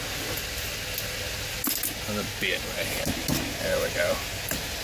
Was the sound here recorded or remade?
recorded